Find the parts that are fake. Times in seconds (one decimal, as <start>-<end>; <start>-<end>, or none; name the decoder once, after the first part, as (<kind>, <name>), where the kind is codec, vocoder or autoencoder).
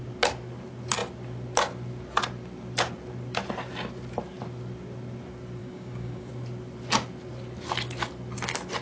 5.6-6.3 (codec, DAC)